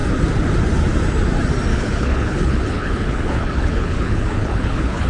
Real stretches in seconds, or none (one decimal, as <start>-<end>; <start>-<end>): 0.0-1.7